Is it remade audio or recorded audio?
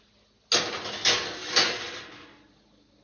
recorded